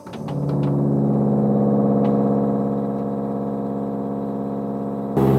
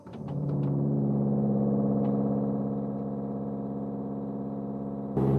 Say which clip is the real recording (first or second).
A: first